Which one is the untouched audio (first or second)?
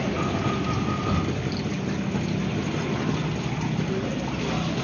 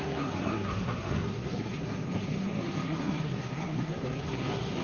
first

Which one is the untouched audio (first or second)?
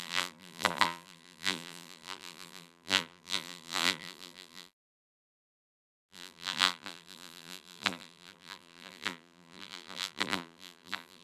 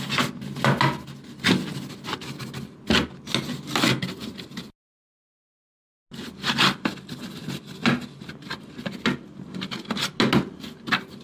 second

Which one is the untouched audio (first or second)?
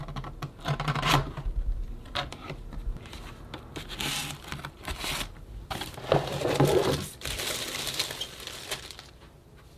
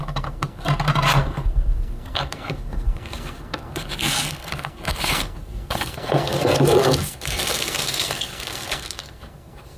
first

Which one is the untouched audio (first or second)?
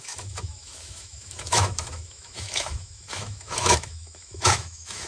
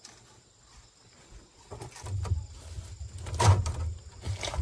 second